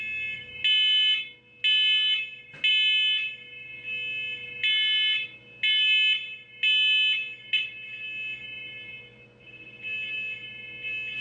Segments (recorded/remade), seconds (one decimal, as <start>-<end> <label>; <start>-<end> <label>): 0.0-11.2 recorded